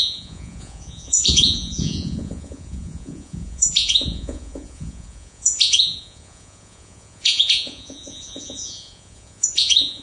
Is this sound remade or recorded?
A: remade